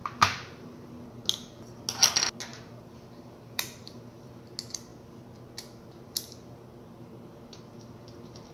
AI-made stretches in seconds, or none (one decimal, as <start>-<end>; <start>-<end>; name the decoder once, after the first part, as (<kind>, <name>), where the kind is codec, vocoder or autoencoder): 0.0-0.9 (vocoder, BigVGAN v2); 2.5-4.3